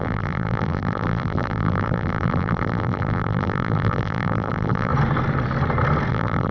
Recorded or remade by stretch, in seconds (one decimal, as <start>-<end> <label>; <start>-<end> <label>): 0.0-4.9 remade; 4.9-6.1 recorded; 6.1-6.5 remade